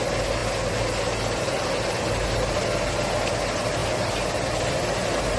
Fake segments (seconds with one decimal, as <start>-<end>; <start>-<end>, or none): none